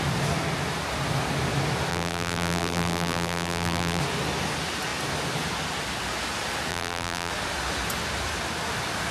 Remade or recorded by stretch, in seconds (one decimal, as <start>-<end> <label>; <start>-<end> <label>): 0.0-1.9 recorded; 1.9-4.0 remade; 4.0-6.7 recorded; 6.7-7.3 remade; 7.3-9.1 recorded